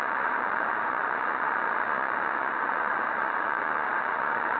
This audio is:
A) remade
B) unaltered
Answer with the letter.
A